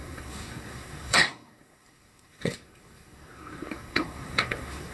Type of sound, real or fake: fake